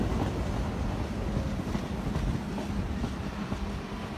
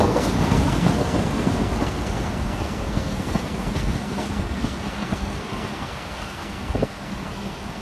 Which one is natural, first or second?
first